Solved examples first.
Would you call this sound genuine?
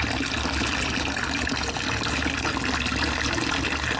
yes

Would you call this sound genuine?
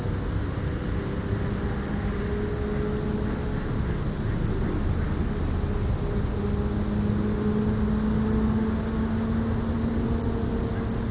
yes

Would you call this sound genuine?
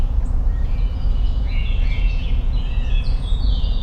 no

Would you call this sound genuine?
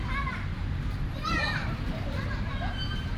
no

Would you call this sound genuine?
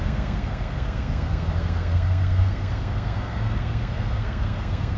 no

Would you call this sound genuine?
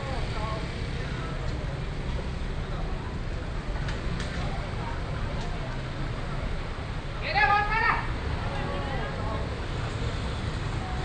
yes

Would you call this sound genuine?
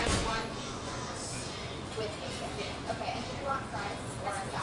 no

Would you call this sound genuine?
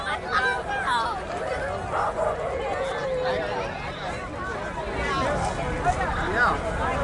yes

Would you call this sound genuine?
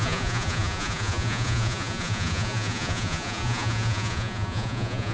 no